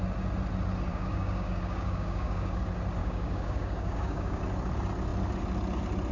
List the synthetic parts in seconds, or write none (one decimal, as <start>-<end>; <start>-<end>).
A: 0.9-2.6; 3.0-4.4